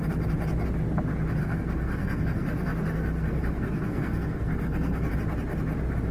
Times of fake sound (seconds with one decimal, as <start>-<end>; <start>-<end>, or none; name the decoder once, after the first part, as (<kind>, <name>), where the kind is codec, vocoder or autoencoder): 1.4-5.1 (codec, SNAC)